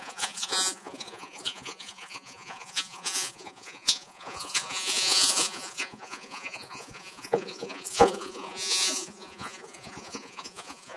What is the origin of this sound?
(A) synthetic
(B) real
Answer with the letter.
A